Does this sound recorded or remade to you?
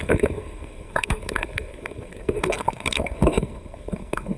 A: remade